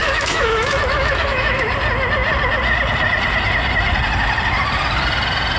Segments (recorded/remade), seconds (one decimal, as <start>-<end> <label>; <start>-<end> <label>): 0.0-1.7 remade; 1.7-5.6 recorded